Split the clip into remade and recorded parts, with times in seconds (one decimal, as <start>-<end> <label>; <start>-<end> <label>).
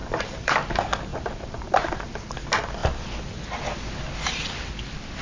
0.0-0.7 remade; 0.7-1.1 recorded; 1.1-2.3 remade; 2.3-5.2 recorded